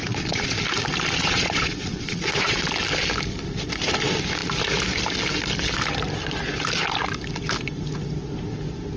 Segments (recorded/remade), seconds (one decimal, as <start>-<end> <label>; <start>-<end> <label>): 0.0-0.6 remade; 0.6-1.2 recorded; 1.2-2.6 remade; 2.6-9.0 recorded